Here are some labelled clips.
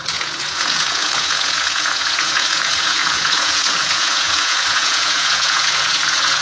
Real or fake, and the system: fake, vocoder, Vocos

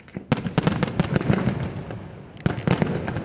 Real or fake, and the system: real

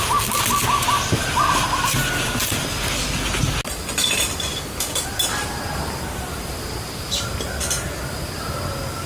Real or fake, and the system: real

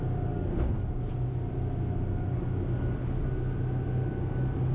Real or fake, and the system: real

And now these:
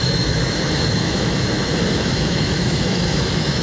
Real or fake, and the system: fake, autoencoder, DAC-VAE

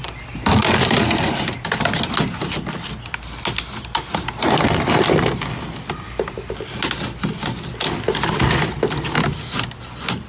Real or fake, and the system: real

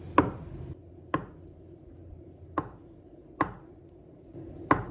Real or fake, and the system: real